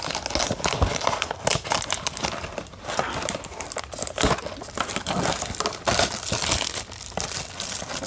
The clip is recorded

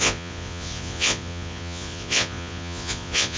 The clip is remade